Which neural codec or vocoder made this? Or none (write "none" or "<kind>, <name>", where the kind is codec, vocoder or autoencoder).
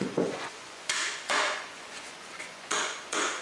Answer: vocoder, Vocos